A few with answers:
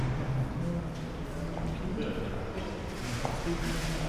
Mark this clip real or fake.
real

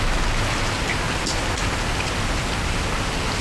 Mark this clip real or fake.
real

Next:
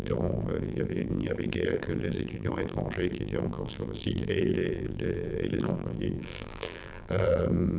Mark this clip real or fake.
fake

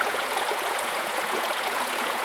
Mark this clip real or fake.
fake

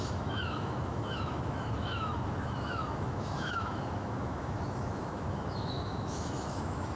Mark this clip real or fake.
fake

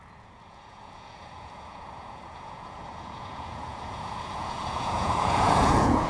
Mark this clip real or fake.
fake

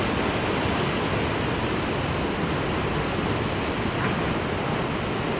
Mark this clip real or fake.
real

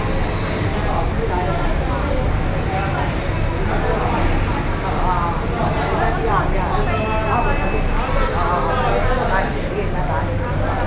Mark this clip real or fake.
real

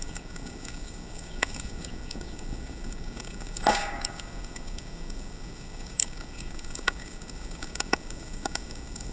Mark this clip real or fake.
fake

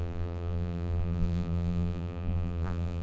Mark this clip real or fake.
fake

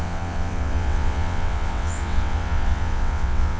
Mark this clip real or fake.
fake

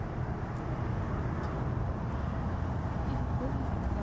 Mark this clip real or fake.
real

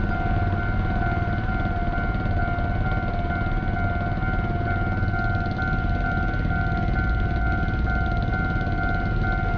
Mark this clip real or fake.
real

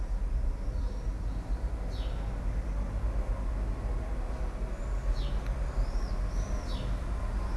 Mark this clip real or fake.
real